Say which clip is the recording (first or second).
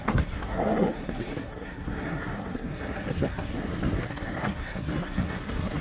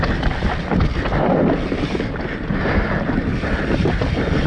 second